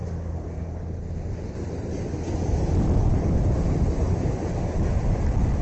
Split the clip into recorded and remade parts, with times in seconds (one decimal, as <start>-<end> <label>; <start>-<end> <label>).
0.0-5.6 recorded